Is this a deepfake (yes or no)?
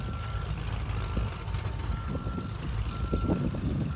no